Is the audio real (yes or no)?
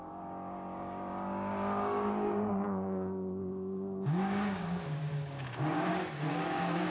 no